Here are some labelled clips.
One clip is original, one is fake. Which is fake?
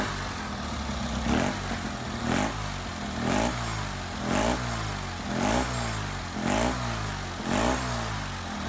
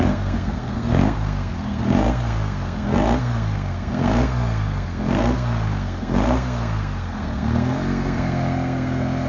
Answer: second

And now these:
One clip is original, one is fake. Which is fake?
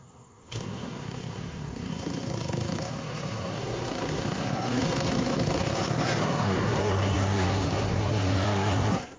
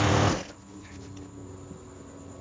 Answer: first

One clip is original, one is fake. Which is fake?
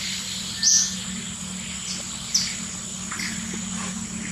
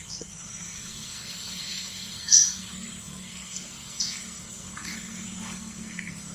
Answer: second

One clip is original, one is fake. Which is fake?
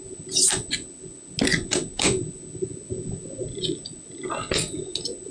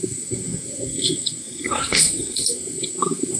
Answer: second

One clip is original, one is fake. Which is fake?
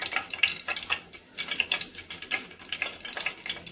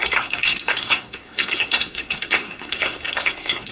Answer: second